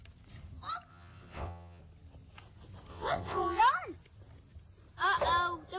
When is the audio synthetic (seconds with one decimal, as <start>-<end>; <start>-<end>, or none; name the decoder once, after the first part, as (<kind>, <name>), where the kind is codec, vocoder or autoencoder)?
0.9-1.8 (vocoder, WaveNeXt); 2.9-3.6